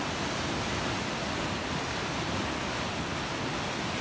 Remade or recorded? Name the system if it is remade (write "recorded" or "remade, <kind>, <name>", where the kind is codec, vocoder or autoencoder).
recorded